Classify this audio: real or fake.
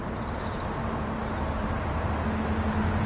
real